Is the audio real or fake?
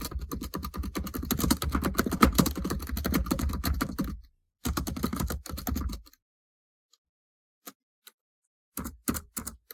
real